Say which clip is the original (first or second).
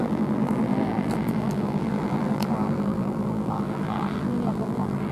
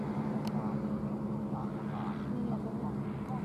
second